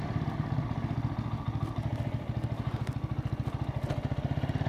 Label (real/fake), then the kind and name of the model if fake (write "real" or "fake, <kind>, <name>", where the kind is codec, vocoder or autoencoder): real